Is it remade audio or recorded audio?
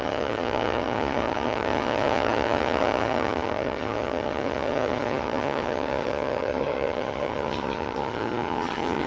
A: remade